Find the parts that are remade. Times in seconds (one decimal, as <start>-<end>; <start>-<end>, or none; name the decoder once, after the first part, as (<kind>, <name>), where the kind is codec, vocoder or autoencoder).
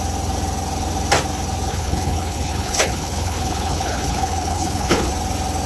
1.7-5.1 (codec, HILCodec)